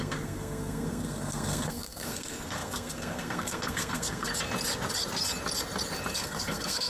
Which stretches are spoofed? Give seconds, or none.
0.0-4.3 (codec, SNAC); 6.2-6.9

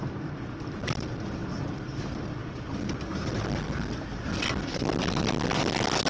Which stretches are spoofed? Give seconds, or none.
none

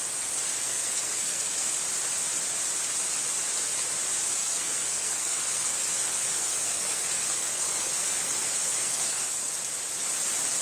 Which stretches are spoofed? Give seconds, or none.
0.6-1.7 (codec, SNAC); 4.4-9.5

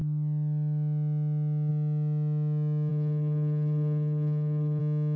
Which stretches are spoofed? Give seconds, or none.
2.9-4.8 (codec, SNAC)

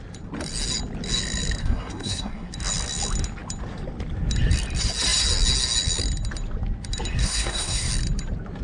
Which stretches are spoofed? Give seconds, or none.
1.6-2.5 (codec, SNAC); 7.2-7.9